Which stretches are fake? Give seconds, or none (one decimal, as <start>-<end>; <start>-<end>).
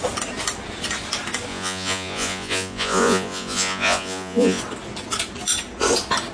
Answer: 1.5-4.6